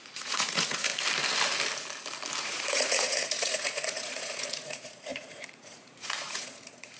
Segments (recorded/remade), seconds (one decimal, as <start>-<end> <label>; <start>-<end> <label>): 0.0-0.9 remade; 0.9-2.4 recorded; 2.4-7.0 remade